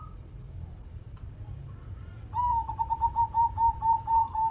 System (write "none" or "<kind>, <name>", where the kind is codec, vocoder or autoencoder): vocoder, BigVGAN v2